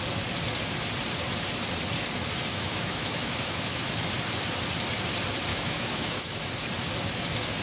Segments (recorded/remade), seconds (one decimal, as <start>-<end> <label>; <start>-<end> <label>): 0.0-2.5 recorded; 2.5-3.9 remade; 3.9-5.5 recorded; 5.5-6.4 remade; 6.4-7.6 recorded